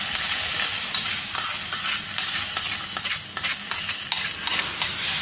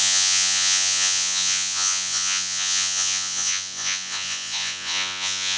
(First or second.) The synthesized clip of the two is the second